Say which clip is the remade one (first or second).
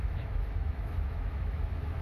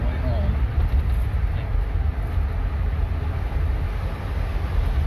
first